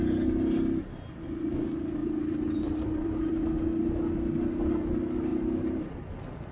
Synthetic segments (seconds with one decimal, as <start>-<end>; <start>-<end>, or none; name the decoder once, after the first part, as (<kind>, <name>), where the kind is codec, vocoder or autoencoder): 2.0-3.6 (vocoder, BigVGAN v2)